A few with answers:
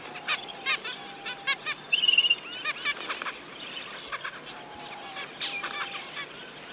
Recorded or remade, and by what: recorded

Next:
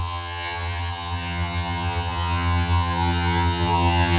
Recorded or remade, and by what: remade, vocoder, HiFi-GAN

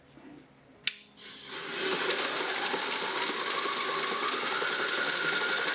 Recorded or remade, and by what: recorded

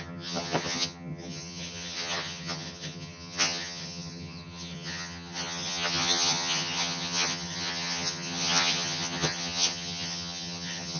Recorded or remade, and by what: remade, vocoder, HiFi-GAN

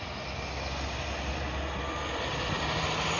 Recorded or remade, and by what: recorded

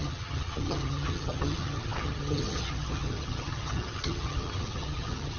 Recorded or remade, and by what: remade, vocoder, HiFi-GAN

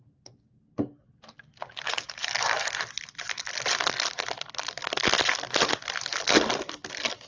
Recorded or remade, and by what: recorded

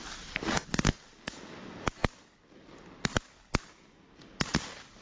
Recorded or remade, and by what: recorded